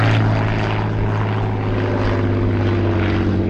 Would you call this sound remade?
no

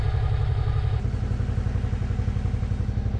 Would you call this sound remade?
no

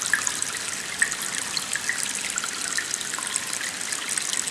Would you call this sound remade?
no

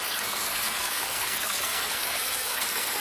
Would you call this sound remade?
yes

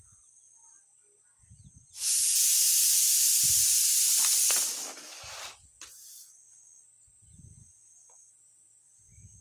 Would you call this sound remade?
no